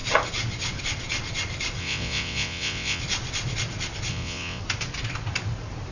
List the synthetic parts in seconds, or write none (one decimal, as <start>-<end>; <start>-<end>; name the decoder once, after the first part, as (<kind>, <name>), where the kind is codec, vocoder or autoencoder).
1.8-3.0 (vocoder, WaveNeXt); 4.1-4.6